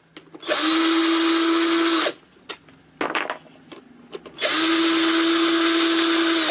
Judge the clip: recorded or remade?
recorded